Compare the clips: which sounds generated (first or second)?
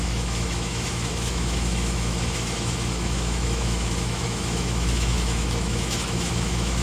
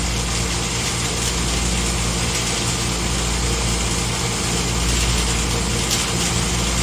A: first